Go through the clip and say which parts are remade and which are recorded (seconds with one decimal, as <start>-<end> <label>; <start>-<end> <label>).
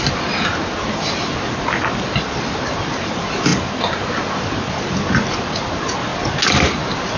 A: 0.0-7.2 recorded